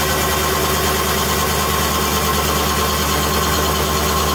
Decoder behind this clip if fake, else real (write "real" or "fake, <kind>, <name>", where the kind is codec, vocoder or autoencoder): real